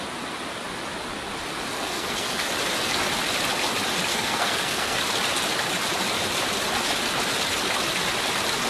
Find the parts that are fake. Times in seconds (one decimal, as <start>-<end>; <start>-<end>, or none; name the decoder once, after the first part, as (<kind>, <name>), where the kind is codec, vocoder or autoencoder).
1.7-2.5 (codec, SNAC); 4.1-5.0